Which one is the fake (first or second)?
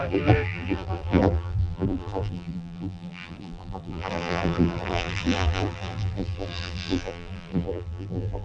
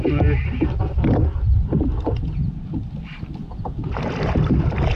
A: first